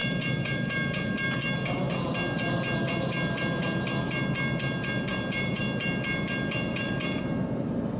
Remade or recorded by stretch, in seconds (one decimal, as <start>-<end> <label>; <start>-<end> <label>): 0.0-1.1 remade; 1.1-5.1 recorded; 5.1-5.6 remade; 5.6-6.7 recorded; 6.7-7.2 remade; 7.2-8.0 recorded